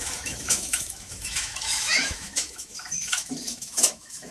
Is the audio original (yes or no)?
no